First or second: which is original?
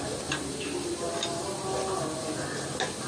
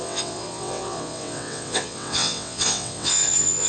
first